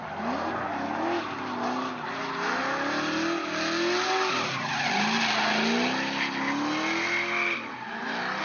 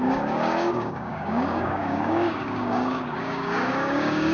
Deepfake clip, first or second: second